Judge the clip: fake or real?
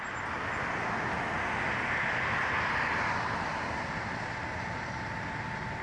real